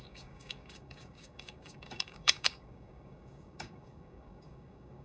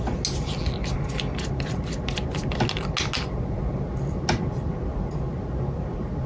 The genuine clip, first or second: second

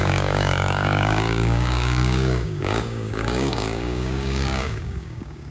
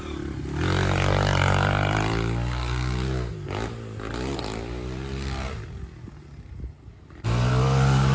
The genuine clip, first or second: second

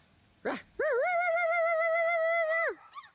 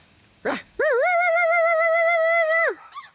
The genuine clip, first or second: first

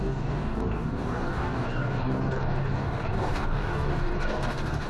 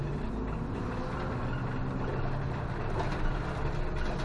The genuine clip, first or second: second